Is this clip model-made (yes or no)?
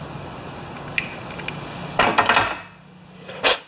no